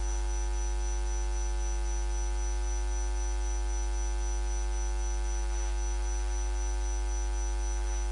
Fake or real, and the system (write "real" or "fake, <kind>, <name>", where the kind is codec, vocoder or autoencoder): real